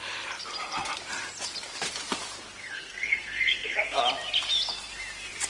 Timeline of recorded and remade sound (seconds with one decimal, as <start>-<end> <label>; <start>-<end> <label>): 0.0-2.6 recorded; 2.6-4.0 remade; 4.0-5.5 recorded